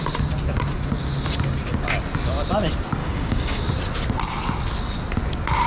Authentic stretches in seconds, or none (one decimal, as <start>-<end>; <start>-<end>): 0.0-3.0; 3.7-5.7